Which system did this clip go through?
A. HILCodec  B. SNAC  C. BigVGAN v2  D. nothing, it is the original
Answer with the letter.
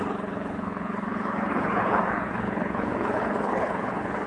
A